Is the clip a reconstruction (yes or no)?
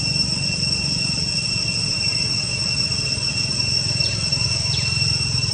no